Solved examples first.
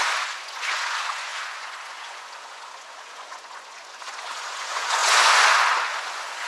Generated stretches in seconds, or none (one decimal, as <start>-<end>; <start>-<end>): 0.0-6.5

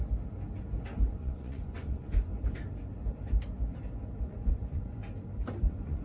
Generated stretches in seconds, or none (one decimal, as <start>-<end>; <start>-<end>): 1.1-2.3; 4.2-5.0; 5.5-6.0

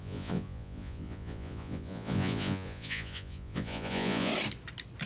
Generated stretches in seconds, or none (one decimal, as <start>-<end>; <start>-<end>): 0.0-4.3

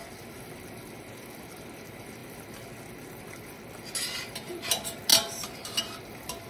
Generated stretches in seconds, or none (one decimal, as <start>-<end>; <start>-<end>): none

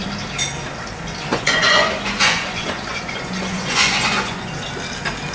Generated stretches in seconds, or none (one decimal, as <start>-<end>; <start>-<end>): 1.3-4.5